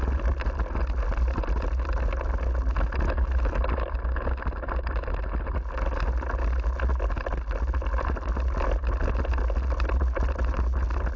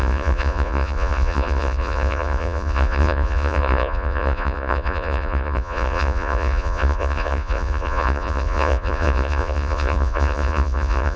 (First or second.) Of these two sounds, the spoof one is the second